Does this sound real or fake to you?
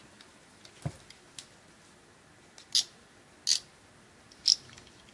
real